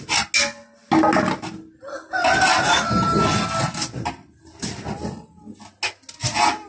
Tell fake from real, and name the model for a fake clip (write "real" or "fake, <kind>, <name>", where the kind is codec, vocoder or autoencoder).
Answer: real